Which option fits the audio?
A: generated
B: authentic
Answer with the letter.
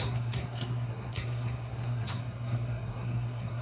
A